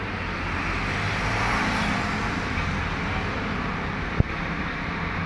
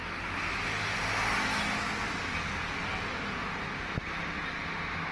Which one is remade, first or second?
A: first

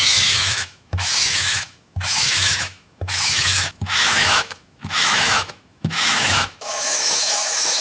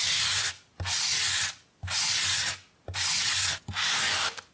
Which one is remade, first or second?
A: first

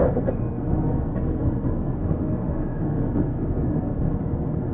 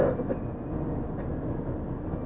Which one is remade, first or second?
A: first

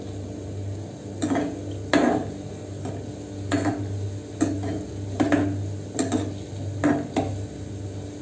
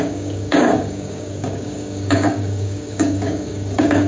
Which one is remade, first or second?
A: second